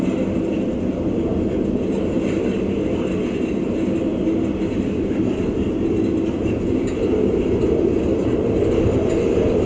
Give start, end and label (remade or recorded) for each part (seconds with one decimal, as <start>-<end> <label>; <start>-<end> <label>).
0.0-9.7 recorded